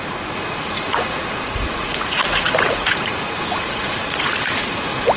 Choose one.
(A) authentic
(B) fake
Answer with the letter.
B